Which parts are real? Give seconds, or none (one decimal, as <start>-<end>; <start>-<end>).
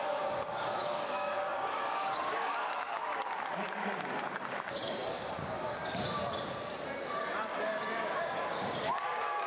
3.0-3.5; 5.8-7.6